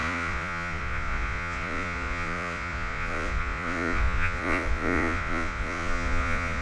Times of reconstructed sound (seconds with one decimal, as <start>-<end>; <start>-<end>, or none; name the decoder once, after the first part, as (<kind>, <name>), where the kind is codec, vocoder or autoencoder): 0.0-6.6 (vocoder, Vocos)